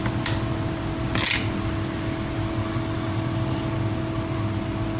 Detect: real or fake real